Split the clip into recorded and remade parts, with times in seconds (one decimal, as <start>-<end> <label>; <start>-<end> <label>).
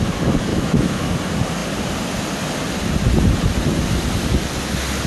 0.0-0.5 recorded; 0.5-1.1 remade; 1.1-5.1 recorded